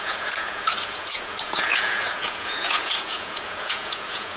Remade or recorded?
remade